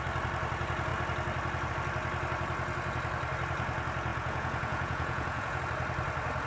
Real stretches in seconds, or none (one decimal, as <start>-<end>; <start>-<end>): 0.0-4.1; 5.6-6.5